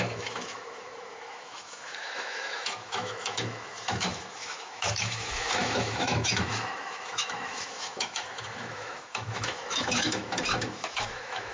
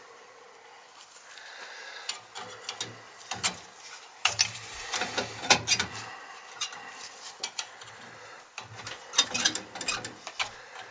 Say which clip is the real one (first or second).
second